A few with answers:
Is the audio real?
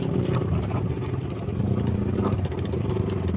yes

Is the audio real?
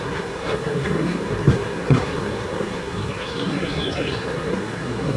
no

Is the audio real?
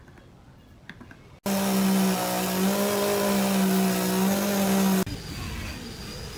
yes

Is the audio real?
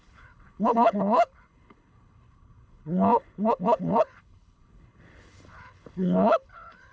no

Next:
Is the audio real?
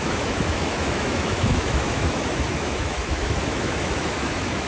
no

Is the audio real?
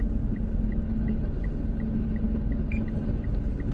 yes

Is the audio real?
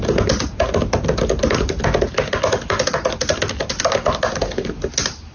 yes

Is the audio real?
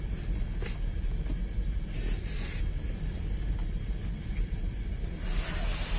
yes